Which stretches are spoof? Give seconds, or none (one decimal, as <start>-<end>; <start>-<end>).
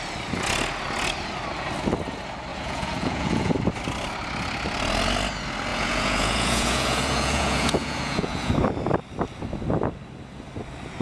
2.5-3.5; 5.7-8.5